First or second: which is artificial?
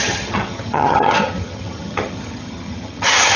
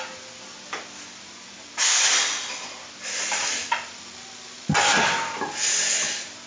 first